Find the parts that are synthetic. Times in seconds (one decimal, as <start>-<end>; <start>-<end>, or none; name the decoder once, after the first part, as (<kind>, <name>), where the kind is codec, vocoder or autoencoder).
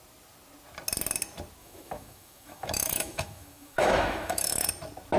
1.6-4.7 (autoencoder, DAC-VAE)